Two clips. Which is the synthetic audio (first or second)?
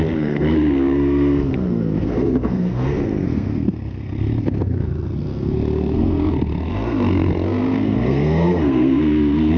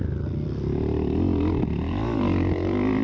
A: first